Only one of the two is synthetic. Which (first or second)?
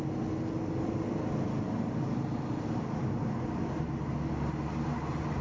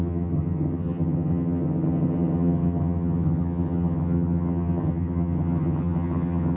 second